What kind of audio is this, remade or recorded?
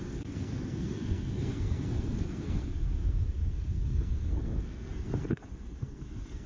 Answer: remade